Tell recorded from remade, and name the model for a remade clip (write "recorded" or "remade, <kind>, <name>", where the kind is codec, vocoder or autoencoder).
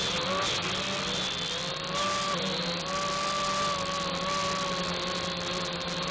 recorded